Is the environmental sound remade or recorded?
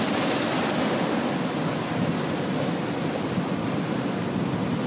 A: recorded